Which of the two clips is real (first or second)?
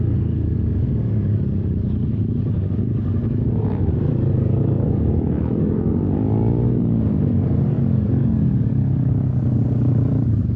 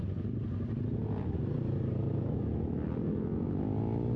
second